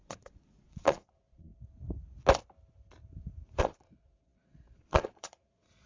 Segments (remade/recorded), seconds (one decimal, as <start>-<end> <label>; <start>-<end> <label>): 0.0-1.5 remade; 1.5-3.6 recorded; 3.6-5.9 remade